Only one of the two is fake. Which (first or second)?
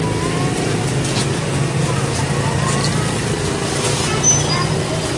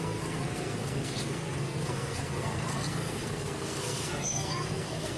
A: second